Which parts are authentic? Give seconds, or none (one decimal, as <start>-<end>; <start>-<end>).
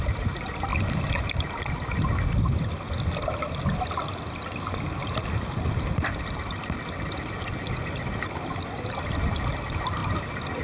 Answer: 0.0-10.6